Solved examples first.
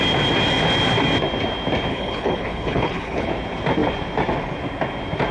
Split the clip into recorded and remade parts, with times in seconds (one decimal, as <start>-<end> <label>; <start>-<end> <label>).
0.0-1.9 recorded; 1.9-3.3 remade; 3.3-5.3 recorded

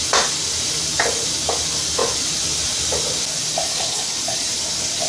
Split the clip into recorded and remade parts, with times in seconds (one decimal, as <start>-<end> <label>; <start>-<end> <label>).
0.0-3.7 recorded; 3.7-4.2 remade; 4.2-5.1 recorded

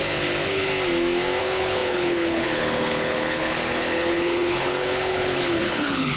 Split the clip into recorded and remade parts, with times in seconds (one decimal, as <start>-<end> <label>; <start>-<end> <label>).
0.0-0.7 remade; 0.7-1.4 recorded; 1.4-6.2 remade